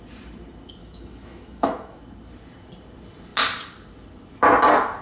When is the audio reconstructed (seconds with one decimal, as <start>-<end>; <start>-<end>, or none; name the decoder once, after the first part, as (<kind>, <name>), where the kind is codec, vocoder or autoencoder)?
0.8-2.0 (autoencoder, DAC-VAE)